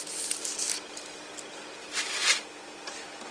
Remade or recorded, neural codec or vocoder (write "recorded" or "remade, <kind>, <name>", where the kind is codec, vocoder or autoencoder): recorded